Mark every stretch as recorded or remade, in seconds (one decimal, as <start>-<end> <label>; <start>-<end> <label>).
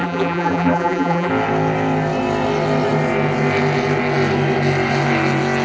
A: 0.0-1.3 remade; 1.3-5.6 recorded